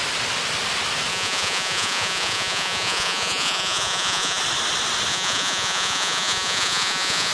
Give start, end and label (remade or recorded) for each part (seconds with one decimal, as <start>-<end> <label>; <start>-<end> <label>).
0.0-1.1 recorded; 1.1-4.4 remade; 4.4-5.1 recorded; 5.1-7.3 remade